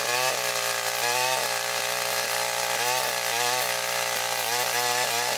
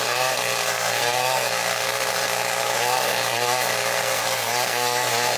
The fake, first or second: second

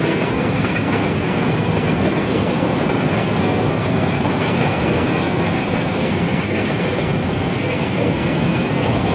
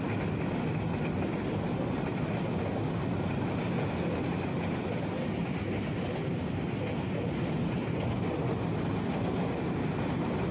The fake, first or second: first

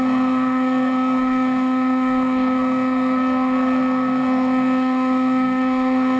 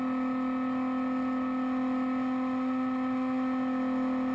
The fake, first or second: first